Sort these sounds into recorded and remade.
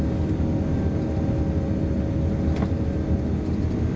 recorded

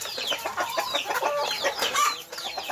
remade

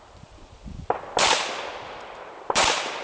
remade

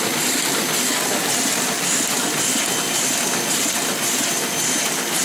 recorded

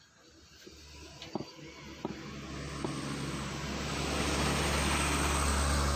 recorded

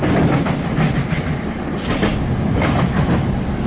remade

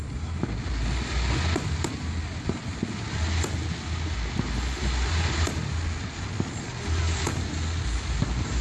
recorded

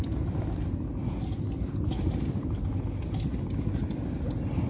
recorded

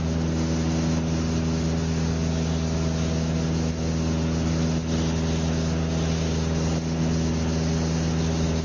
recorded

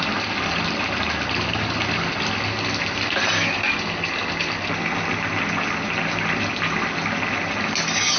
recorded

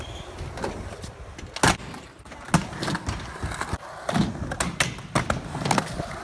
recorded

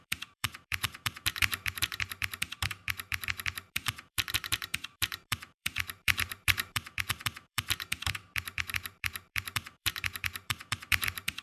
remade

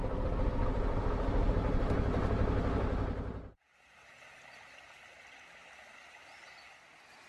recorded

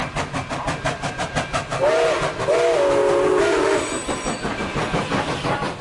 recorded